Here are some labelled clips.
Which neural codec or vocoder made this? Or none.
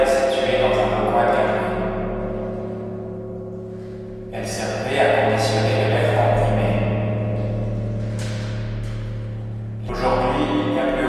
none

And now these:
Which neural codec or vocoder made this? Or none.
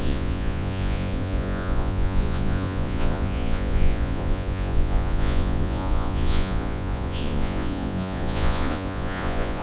vocoder, Vocos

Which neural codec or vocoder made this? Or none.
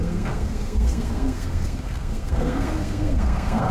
codec, SNAC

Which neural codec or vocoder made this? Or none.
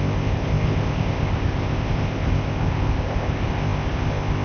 codec, ZipCodec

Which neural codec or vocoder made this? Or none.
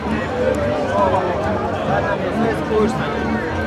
none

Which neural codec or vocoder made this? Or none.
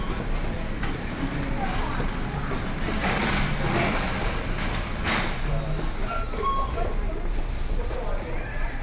none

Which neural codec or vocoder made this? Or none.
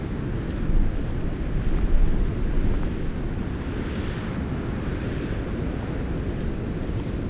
none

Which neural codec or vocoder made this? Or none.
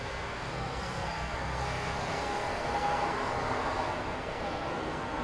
codec, SNAC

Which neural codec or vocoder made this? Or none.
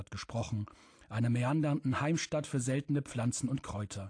none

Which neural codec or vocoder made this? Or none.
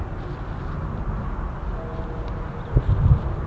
none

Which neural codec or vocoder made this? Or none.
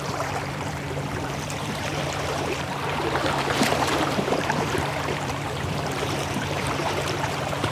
vocoder, BigVGAN v2